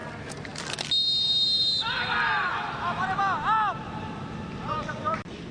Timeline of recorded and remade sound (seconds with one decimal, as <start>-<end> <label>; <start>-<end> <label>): 0.0-2.5 recorded; 2.5-3.0 remade; 3.0-5.5 recorded